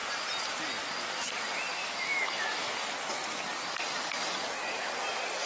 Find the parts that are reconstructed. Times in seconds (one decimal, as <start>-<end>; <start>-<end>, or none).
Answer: 1.8-2.7